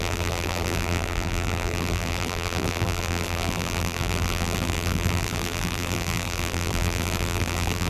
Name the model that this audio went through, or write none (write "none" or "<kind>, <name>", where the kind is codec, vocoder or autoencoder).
vocoder, BigVGAN v2